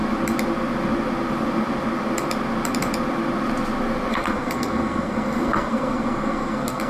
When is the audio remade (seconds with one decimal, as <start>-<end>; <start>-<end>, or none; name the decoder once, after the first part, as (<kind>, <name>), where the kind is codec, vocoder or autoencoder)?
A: 4.1-6.9 (codec, SNAC)